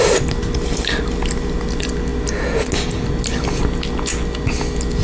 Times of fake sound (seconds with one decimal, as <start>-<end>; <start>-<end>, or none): none